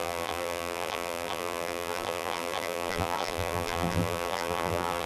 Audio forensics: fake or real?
fake